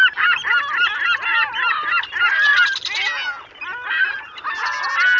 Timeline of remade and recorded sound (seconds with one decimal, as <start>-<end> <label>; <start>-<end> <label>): 0.0-5.2 recorded